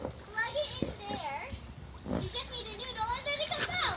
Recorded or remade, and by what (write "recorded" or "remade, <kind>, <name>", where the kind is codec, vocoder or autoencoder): recorded